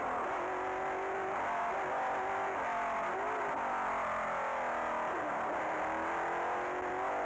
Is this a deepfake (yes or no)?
no